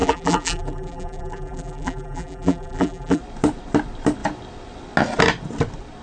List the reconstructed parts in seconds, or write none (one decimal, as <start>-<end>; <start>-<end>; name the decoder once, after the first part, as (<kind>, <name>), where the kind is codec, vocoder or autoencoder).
0.0-3.2 (vocoder, BigVGAN v2)